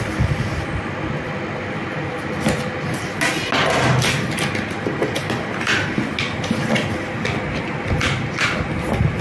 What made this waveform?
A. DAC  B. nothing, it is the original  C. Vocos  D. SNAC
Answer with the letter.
B